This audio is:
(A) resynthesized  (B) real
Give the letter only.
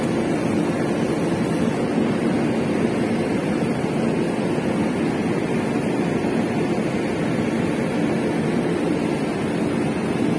B